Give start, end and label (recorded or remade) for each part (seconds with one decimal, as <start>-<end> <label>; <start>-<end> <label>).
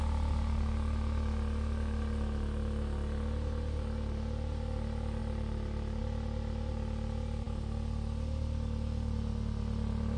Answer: 0.0-5.2 recorded; 5.2-6.0 remade; 6.0-10.2 recorded